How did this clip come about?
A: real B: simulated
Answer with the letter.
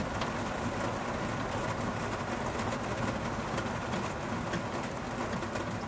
A